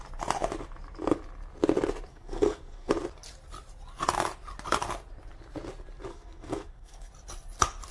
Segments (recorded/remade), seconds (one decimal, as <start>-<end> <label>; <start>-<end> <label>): 0.0-2.1 recorded; 2.1-2.9 remade; 2.9-6.1 recorded; 6.1-7.1 remade; 7.1-7.9 recorded